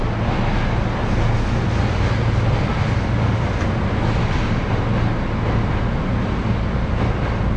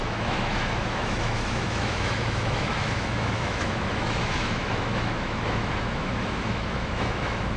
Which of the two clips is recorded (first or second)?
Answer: first